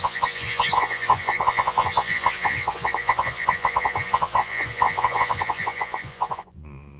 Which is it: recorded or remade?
remade